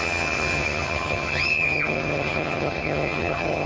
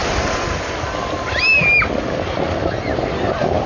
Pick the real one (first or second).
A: second